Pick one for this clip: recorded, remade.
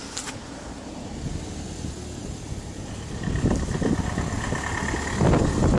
recorded